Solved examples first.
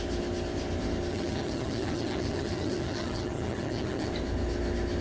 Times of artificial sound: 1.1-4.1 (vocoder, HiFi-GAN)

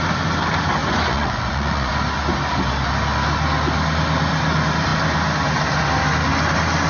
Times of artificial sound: 0.8-1.9 (vocoder, Vocos)

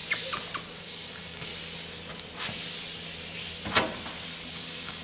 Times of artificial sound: 0.8-1.5 (codec, DAC); 4.5-5.0

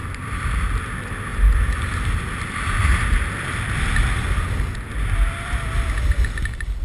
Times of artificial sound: none

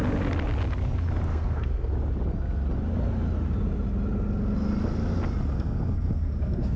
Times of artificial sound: 1.3-1.9 (codec, SNAC); 5.5-6.8

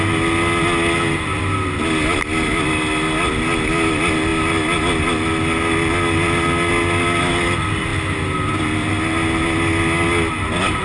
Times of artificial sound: none

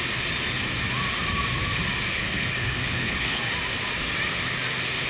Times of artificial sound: 2.1-3.4 (codec, HILCodec)